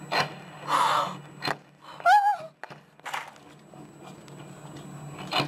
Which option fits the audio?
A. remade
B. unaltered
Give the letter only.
B